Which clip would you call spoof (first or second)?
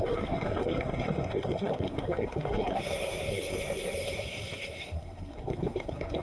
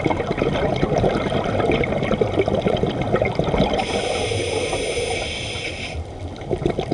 first